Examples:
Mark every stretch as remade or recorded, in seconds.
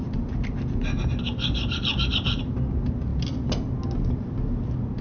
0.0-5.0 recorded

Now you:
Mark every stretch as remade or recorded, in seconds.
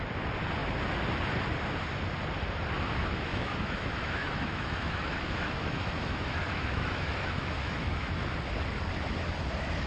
0.0-3.3 recorded; 3.3-8.1 remade; 8.1-9.9 recorded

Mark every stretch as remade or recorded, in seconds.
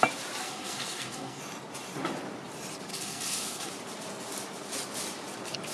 0.0-0.4 recorded; 0.4-1.4 remade; 1.4-2.9 recorded; 2.9-3.7 remade; 3.7-5.7 recorded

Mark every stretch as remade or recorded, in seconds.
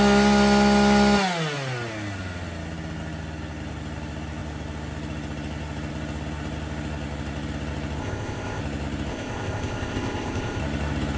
0.0-8.0 recorded; 8.0-8.6 remade; 8.6-9.1 recorded; 9.1-10.6 remade; 10.6-11.2 recorded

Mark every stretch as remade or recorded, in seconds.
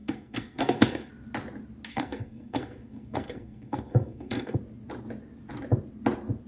0.0-1.1 remade; 1.1-1.9 recorded; 1.9-4.6 remade; 4.6-6.5 recorded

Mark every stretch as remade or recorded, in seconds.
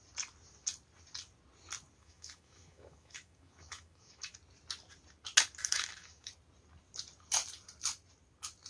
0.0-2.0 recorded; 2.0-4.3 remade; 4.3-5.6 recorded; 5.6-6.3 remade; 6.3-8.7 recorded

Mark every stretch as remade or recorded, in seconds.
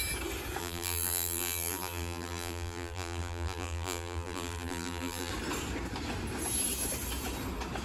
0.0-0.6 recorded; 0.6-5.3 remade; 5.3-7.8 recorded